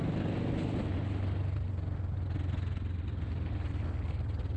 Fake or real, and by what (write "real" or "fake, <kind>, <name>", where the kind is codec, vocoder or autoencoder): real